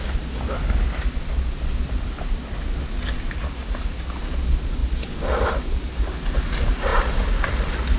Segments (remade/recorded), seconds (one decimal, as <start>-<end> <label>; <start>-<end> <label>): 0.0-8.0 recorded